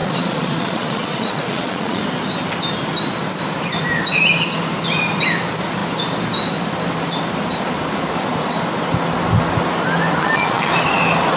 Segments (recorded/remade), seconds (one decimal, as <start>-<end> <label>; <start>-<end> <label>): 0.0-2.0 remade; 2.0-10.2 recorded; 10.2-10.7 remade; 10.7-11.4 recorded